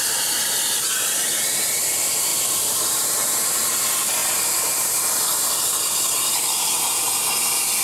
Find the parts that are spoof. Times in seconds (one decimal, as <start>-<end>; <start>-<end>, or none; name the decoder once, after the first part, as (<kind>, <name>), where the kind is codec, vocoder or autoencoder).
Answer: 0.4-1.8 (vocoder, BigVGAN v2); 2.3-3.7; 4.2-5.0